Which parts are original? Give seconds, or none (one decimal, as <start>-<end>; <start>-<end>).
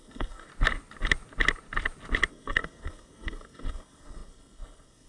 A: 0.5-2.3